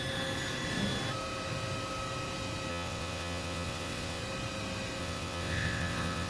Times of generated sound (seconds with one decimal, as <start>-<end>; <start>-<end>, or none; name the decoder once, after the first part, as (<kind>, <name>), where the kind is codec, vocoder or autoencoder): 2.7-4.2 (vocoder, WaveNeXt); 5.0-6.3